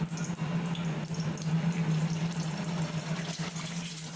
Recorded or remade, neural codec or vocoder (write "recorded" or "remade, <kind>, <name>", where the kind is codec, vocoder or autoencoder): recorded